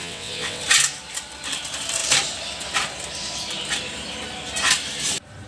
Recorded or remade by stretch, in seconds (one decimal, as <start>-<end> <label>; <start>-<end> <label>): 0.0-0.6 remade; 0.6-5.5 recorded